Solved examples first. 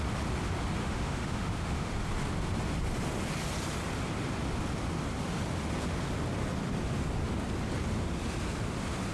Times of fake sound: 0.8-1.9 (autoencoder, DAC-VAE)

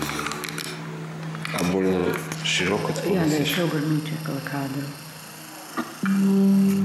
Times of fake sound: none